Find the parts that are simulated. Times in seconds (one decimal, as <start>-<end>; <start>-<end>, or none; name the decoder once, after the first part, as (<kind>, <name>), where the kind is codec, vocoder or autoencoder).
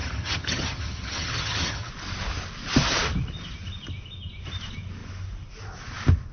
0.0-1.9 (vocoder, HiFi-GAN)